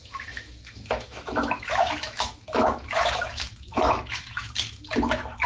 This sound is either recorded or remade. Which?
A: remade